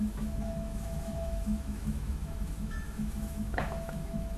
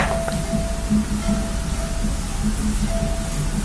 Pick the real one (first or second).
second